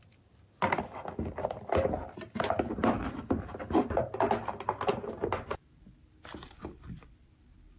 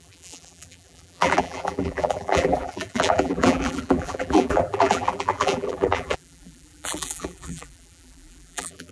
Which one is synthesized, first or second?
second